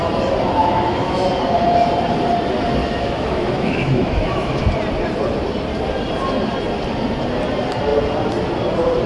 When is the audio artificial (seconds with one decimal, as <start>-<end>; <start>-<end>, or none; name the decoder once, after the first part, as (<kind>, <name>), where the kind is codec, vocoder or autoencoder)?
0.6-1.3 (autoencoder, DAC-VAE); 2.8-4.6